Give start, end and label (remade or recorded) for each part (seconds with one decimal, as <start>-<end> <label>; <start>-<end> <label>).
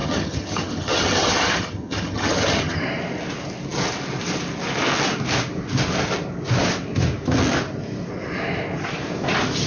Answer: 0.0-2.8 remade; 2.8-9.7 recorded